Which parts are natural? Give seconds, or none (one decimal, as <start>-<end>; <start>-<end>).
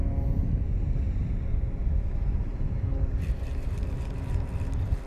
0.0-5.1